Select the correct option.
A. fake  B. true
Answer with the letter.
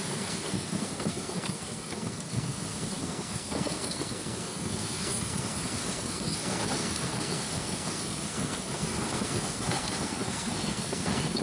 A